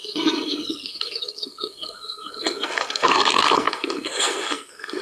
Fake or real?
fake